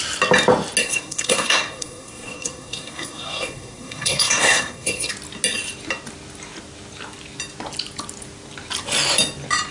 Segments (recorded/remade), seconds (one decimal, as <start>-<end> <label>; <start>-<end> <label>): 0.0-0.8 recorded; 0.8-5.1 remade; 5.1-9.7 recorded